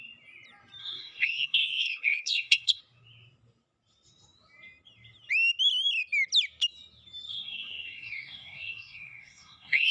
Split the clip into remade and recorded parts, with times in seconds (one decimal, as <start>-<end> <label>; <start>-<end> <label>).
0.0-0.8 recorded; 0.8-2.8 remade; 2.8-7.3 recorded; 7.3-9.9 remade